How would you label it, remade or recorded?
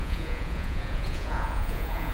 remade